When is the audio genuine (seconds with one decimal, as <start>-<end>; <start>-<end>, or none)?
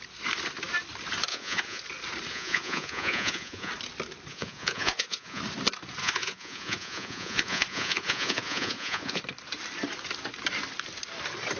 0.0-1.3; 1.8-2.3; 3.7-4.3; 5.4-6.0; 9.2-11.6